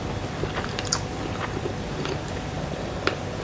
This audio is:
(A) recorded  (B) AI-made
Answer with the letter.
A